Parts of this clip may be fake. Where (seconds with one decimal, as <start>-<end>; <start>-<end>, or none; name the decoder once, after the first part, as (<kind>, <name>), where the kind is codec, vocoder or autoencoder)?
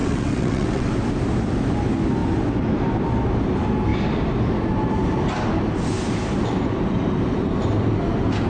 0.0-0.9 (vocoder, WaveNeXt)